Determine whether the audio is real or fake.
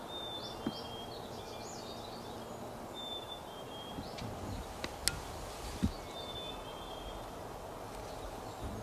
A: real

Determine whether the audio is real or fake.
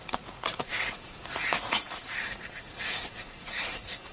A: fake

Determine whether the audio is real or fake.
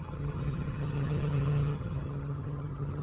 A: fake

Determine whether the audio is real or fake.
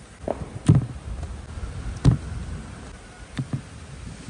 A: real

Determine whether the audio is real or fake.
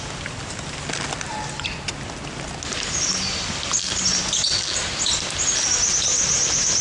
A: real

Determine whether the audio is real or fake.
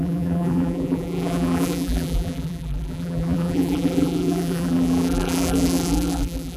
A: fake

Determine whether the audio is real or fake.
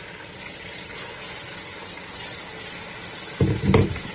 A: real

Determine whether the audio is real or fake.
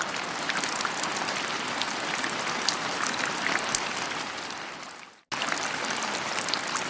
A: real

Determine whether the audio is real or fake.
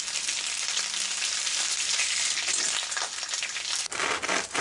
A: real